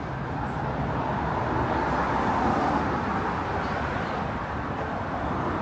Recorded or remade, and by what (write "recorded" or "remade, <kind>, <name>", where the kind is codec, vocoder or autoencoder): recorded